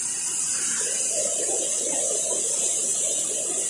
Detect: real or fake real